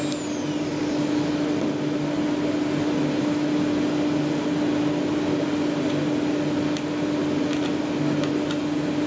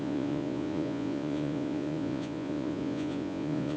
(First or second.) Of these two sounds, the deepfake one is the second